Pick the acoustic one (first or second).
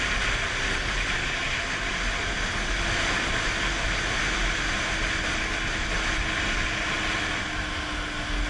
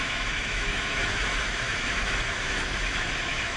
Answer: first